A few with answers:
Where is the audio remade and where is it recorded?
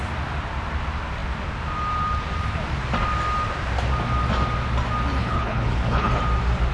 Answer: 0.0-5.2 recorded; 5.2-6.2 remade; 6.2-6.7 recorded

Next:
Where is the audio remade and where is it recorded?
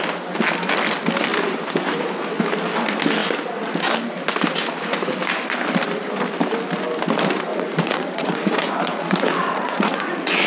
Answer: 0.0-7.5 recorded; 7.5-10.5 remade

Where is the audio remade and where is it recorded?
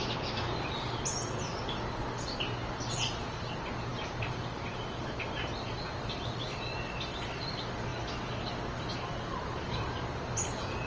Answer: 0.0-10.9 recorded